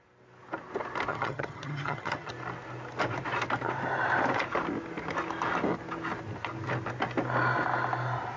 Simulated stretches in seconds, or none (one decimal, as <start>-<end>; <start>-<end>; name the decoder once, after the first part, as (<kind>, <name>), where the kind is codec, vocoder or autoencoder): 1.1-2.3 (vocoder, HiFi-GAN)